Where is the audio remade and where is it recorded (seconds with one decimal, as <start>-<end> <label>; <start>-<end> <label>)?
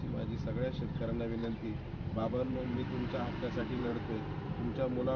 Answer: 0.0-1.4 recorded; 1.4-4.5 remade; 4.5-5.2 recorded